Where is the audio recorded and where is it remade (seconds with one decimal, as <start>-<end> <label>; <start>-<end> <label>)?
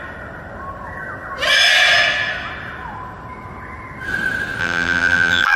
0.0-4.6 recorded; 4.6-5.6 remade